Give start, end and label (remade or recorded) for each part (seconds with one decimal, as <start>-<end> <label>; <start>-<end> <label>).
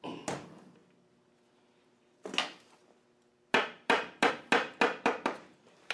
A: 0.0-5.9 recorded